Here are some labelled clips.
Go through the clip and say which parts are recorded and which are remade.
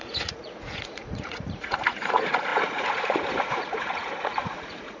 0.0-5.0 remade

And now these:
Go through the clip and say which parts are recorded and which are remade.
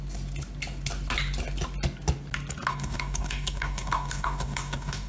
0.0-2.7 recorded; 2.7-5.1 remade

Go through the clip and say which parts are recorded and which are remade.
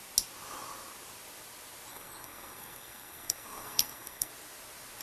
0.0-1.9 recorded; 1.9-4.3 remade; 4.3-5.0 recorded